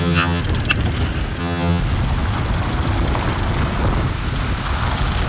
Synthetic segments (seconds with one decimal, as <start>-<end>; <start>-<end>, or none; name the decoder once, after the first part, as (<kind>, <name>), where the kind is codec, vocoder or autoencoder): 0.0-0.4 (vocoder, HiFi-GAN); 1.4-1.8